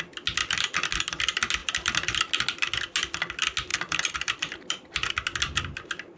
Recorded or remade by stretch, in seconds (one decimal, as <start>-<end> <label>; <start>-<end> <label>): 0.0-1.6 recorded; 1.6-2.2 remade; 2.2-3.7 recorded; 3.7-5.1 remade; 5.1-6.2 recorded